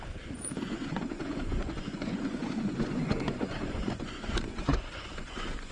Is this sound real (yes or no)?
no